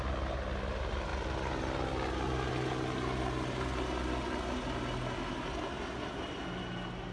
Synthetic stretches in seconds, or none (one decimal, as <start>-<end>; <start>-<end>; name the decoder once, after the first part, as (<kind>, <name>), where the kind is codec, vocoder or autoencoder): none